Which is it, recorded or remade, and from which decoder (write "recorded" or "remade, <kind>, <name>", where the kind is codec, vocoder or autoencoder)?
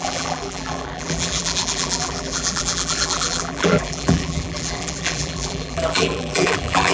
remade, vocoder, BigVGAN v2